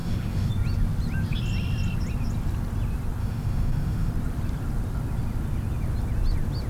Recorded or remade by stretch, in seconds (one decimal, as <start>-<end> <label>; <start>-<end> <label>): 0.0-0.5 remade; 0.5-3.2 recorded; 3.2-4.1 remade; 4.1-6.7 recorded